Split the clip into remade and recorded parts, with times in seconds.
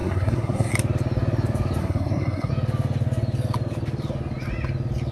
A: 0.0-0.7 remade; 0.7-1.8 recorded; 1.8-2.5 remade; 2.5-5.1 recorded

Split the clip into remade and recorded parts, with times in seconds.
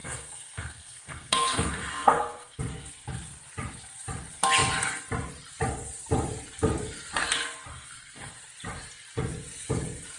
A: 0.0-2.6 remade; 2.6-7.7 recorded; 7.7-8.3 remade; 8.3-10.2 recorded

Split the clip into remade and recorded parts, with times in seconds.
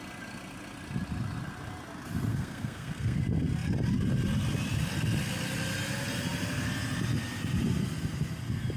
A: 0.0-2.3 recorded; 2.3-3.2 remade; 3.2-8.8 recorded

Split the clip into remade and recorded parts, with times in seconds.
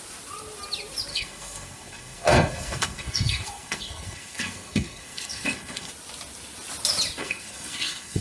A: 0.0-1.1 recorded; 1.1-5.9 remade; 5.9-7.2 recorded; 7.2-8.2 remade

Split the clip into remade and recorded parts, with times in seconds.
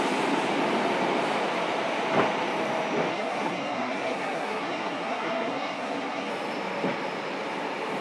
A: 0.0-3.1 recorded; 3.1-6.3 remade; 6.3-8.0 recorded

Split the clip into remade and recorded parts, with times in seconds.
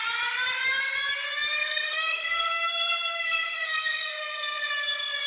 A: 0.0-1.6 recorded; 1.6-4.7 remade; 4.7-5.3 recorded